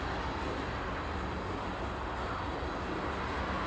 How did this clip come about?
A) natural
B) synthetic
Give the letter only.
A